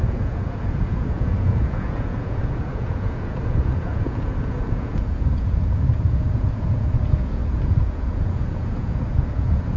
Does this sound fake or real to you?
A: fake